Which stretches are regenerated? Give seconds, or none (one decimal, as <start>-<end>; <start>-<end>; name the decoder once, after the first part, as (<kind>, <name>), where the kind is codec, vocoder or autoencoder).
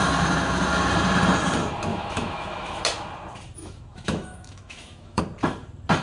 1.9-2.8 (autoencoder, DAC-VAE); 3.6-5.2